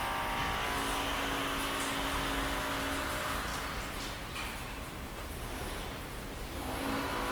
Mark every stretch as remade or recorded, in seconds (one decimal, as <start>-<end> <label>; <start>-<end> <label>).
0.0-3.5 recorded; 3.5-4.2 remade; 4.2-7.3 recorded